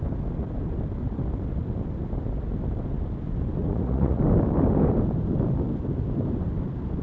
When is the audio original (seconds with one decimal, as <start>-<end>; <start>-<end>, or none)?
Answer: 0.0-3.6; 4.2-7.0